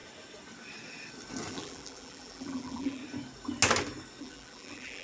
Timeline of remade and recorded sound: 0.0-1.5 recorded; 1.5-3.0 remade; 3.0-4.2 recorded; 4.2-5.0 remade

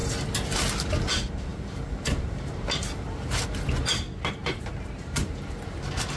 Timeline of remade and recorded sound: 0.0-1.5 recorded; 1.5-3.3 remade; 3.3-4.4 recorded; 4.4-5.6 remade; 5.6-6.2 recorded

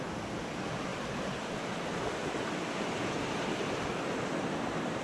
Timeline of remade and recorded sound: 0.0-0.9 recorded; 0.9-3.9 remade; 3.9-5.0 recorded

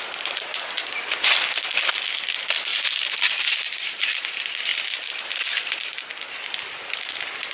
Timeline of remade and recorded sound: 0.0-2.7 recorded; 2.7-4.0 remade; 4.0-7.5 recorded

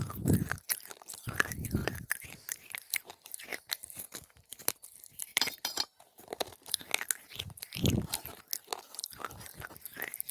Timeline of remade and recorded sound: 0.0-1.8 recorded; 1.8-3.1 remade; 3.1-3.5 recorded; 3.5-4.7 remade; 4.7-5.3 recorded; 5.3-8.4 remade; 8.4-10.3 recorded